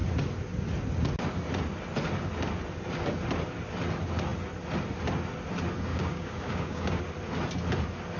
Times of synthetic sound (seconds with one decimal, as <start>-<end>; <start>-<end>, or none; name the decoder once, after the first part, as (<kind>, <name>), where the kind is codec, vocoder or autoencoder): 5.9-7.0 (codec, DAC)